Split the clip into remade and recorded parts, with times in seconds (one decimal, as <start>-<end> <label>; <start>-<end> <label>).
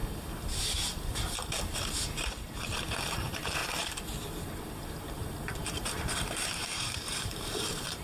0.0-3.1 recorded; 3.1-3.6 remade; 3.6-5.6 recorded; 5.6-8.0 remade